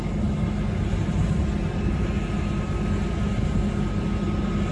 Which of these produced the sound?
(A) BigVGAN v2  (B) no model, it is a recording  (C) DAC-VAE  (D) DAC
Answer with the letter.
B